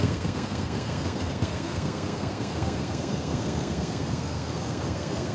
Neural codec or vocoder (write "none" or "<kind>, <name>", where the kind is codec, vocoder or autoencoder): codec, SNAC